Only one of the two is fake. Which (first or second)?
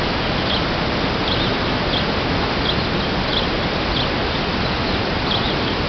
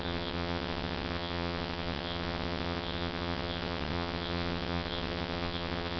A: second